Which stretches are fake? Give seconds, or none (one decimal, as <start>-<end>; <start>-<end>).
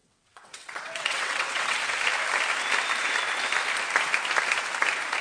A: 0.0-1.8